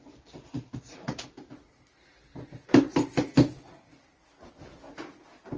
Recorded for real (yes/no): yes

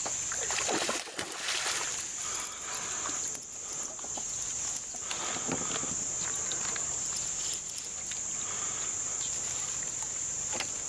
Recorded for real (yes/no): yes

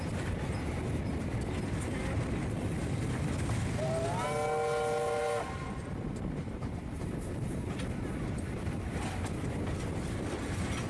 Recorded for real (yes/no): yes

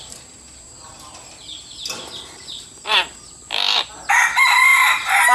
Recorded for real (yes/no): yes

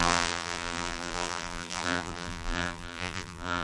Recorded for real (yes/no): no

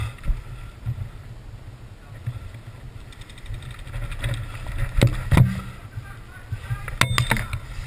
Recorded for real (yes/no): yes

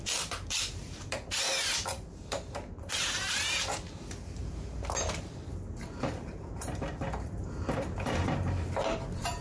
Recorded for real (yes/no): no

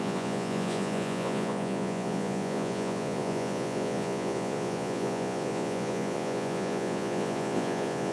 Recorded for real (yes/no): no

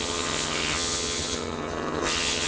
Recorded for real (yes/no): no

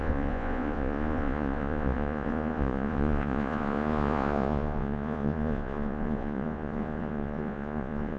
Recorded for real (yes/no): no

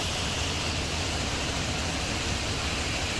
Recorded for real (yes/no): yes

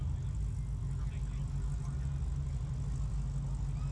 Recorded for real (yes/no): yes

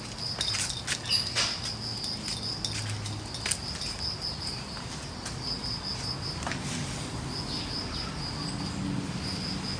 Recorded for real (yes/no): yes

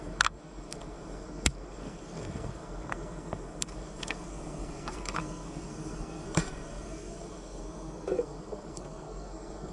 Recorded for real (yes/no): no